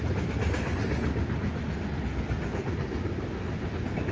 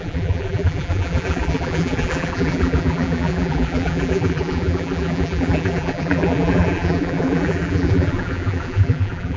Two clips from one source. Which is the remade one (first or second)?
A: second